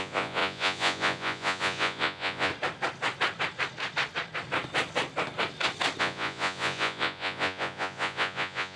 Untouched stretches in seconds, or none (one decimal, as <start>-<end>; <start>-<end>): 2.5-6.0